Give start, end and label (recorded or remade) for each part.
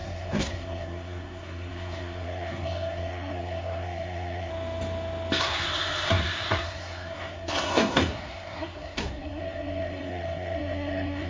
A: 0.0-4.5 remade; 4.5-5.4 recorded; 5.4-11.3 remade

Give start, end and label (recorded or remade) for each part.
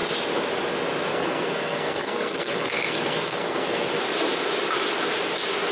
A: 0.0-1.1 recorded; 1.1-3.9 remade; 3.9-5.7 recorded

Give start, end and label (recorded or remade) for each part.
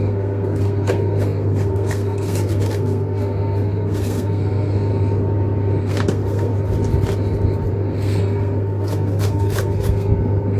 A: 0.0-4.9 remade; 4.9-5.8 recorded; 5.8-6.5 remade; 6.5-7.7 recorded; 7.7-10.6 remade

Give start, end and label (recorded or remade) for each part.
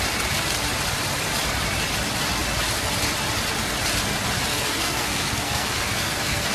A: 0.0-4.5 recorded; 4.5-6.5 remade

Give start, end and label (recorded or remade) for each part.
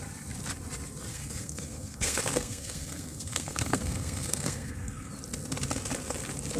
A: 0.0-1.1 recorded; 1.1-5.1 remade; 5.1-6.6 recorded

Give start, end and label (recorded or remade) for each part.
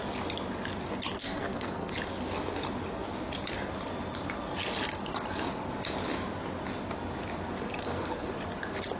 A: 0.0-1.2 recorded; 1.2-1.9 remade; 1.9-7.8 recorded; 7.8-8.3 remade; 8.3-9.0 recorded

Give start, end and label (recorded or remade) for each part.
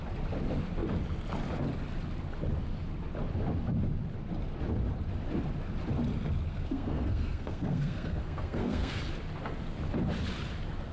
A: 0.0-6.5 recorded; 6.5-9.0 remade; 9.0-10.9 recorded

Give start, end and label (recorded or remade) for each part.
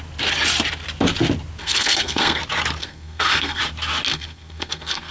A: 0.0-1.6 recorded; 1.6-2.4 remade; 2.4-2.8 recorded; 2.8-3.6 remade; 3.6-4.1 recorded; 4.1-5.1 remade